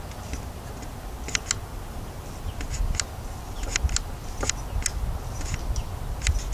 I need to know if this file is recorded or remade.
recorded